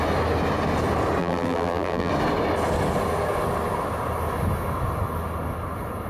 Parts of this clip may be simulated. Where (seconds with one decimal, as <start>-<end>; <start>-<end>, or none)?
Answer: 1.2-2.1